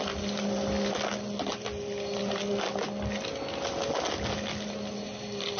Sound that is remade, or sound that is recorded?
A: recorded